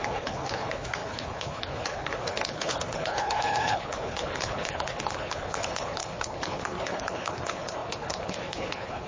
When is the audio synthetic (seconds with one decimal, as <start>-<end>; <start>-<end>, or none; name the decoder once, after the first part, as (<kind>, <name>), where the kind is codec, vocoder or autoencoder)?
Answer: 0.0-9.1 (codec, HILCodec)